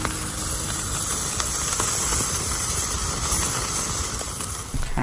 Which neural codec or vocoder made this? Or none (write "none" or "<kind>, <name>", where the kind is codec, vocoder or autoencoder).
vocoder, BigVGAN v2